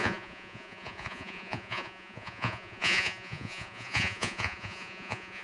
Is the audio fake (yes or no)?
yes